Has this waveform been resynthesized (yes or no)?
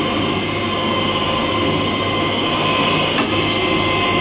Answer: no